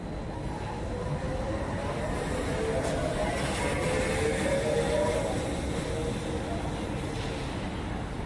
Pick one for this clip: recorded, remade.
recorded